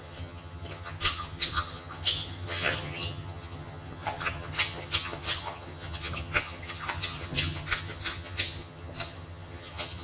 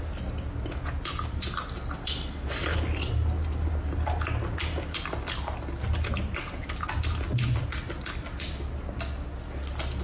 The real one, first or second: second